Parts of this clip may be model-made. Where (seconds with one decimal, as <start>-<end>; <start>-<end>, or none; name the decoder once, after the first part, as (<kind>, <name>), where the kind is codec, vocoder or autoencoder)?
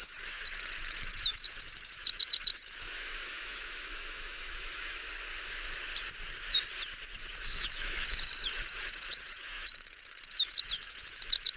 0.0-5.1 (autoencoder, DAC-VAE); 7.3-11.6